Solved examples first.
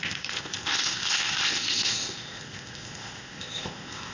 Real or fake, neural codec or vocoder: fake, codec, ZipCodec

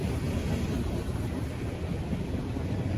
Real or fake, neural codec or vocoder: real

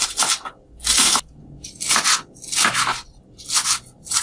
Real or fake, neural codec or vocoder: real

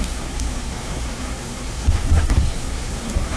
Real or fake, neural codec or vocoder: fake, codec, SNAC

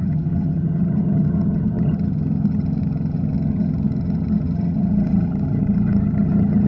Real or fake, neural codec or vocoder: fake, vocoder, HiFi-GAN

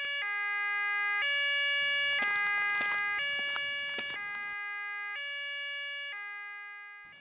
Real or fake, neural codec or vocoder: real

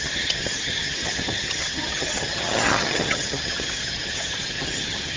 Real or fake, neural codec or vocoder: fake, vocoder, HiFi-GAN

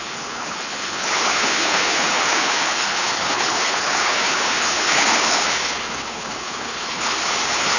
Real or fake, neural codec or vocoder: fake, codec, HILCodec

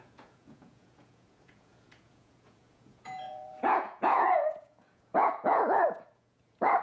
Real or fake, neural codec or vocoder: fake, vocoder, Vocos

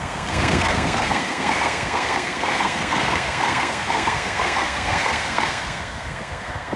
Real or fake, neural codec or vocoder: fake, codec, SNAC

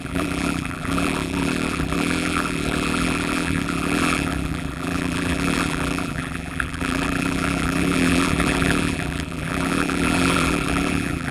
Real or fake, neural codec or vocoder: fake, vocoder, BigVGAN v2